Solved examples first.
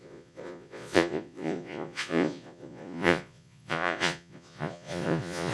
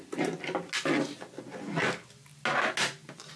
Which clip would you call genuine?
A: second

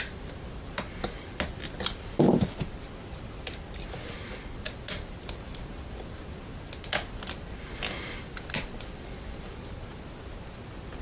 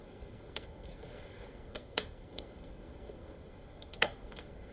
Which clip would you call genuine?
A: first